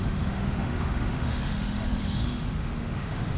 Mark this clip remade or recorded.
remade